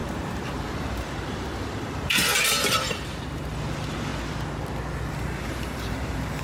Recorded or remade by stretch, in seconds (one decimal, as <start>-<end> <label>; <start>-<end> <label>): 0.0-4.1 remade; 4.1-5.1 recorded; 5.1-6.4 remade